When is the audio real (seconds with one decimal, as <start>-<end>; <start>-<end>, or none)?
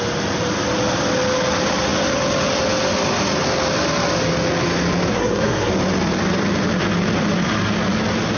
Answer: 0.0-5.1; 5.7-8.4